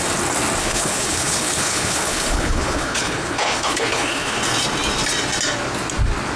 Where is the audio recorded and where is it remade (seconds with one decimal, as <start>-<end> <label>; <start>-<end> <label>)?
0.0-0.6 recorded; 0.6-4.4 remade; 4.4-6.4 recorded

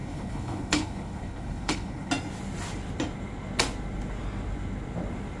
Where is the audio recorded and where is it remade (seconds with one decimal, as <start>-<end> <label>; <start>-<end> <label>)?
0.0-2.1 remade; 2.1-5.4 recorded